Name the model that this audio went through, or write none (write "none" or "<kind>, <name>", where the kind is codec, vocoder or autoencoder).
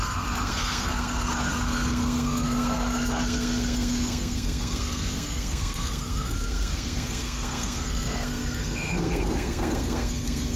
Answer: codec, SNAC